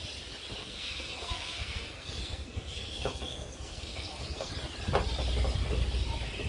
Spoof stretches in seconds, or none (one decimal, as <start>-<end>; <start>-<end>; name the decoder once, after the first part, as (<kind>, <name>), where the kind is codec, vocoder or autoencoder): 0.6-4.5 (codec, SNAC)